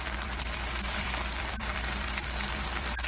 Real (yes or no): no